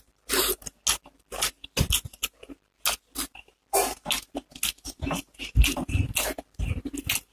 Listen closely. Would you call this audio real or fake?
real